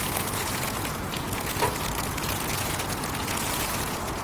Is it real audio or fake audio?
fake